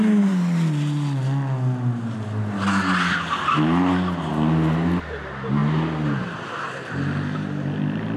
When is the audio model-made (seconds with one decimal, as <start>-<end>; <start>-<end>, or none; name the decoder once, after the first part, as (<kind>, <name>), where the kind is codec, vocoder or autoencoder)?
none